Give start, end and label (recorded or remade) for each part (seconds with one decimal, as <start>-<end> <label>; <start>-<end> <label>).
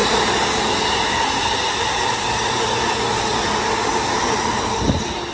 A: 0.0-5.3 recorded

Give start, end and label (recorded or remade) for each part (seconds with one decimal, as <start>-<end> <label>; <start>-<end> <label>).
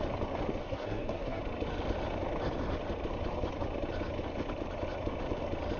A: 0.0-0.6 recorded; 0.6-1.4 remade; 1.4-5.8 recorded